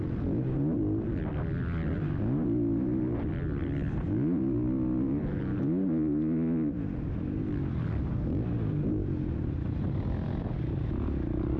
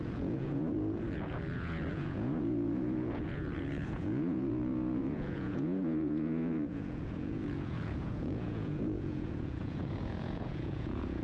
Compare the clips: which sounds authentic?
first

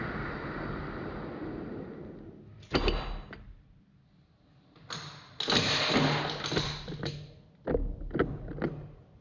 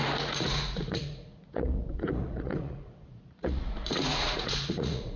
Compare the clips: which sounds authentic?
first